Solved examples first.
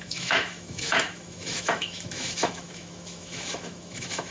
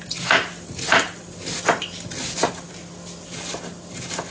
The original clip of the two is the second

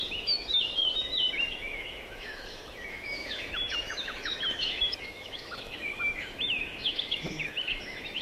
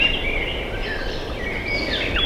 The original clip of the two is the second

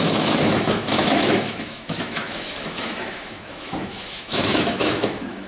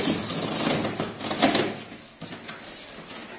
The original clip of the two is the second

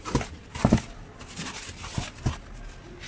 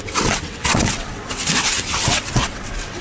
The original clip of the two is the first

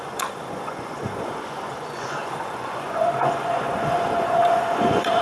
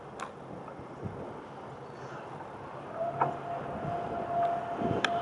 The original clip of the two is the second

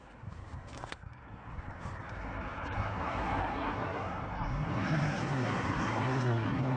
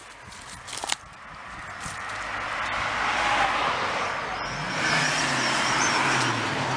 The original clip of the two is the second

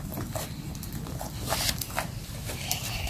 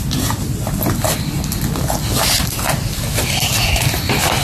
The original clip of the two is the second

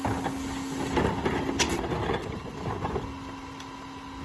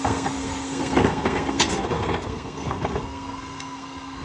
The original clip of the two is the first